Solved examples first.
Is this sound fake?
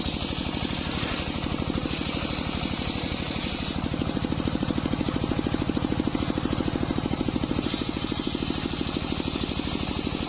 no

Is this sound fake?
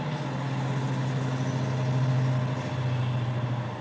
no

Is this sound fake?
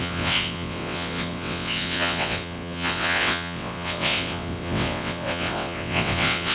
yes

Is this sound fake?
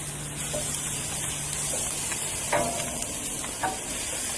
no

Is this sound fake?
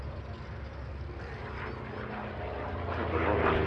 no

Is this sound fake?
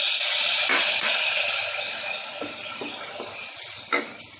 no